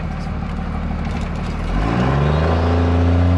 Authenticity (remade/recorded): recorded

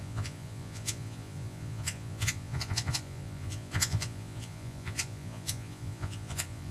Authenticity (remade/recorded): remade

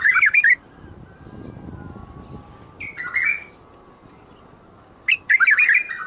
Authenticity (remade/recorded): recorded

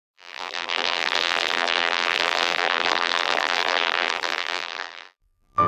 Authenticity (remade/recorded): remade